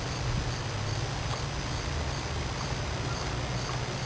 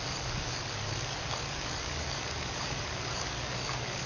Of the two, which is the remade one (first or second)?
second